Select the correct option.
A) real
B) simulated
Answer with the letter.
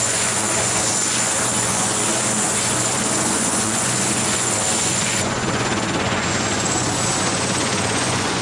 B